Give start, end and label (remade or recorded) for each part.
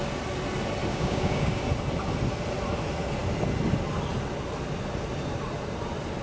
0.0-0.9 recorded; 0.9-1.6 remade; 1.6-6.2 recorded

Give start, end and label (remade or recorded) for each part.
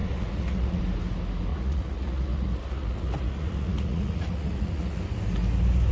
0.0-0.8 remade; 0.8-1.5 recorded; 1.5-5.0 remade; 5.0-5.9 recorded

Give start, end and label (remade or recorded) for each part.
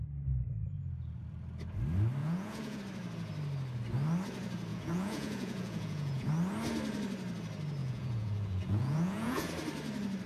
0.0-2.2 recorded; 2.2-2.8 remade; 2.8-4.7 recorded; 4.7-6.3 remade; 6.3-7.8 recorded; 7.8-9.5 remade; 9.5-10.3 recorded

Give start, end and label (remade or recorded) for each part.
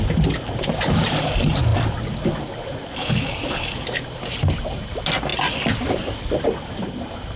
0.0-7.4 recorded